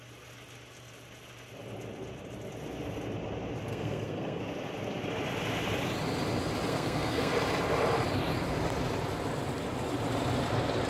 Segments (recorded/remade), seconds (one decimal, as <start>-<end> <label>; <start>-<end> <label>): 0.0-3.7 recorded; 3.7-4.4 remade; 4.4-6.7 recorded; 6.7-7.3 remade; 7.3-10.9 recorded